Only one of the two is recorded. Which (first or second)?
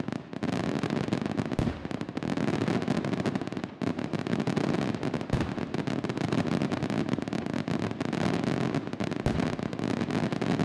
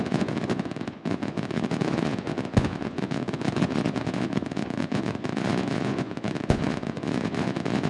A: first